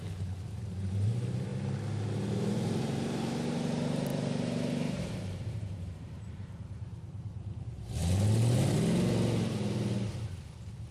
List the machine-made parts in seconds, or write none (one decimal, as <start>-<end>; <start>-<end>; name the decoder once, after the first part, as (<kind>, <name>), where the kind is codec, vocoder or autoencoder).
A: 0.0-1.5 (vocoder, BigVGAN v2); 2.3-8.0; 10.5-10.9